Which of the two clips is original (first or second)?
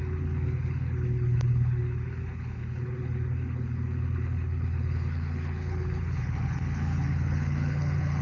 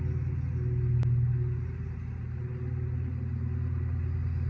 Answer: second